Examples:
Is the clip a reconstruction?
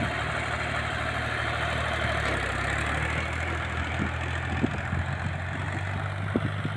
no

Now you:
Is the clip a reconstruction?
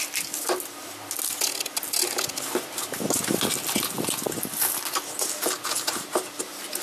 no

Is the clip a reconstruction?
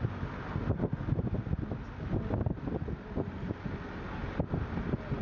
no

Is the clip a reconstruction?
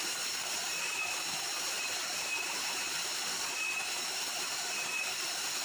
yes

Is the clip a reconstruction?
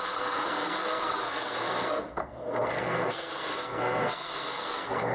yes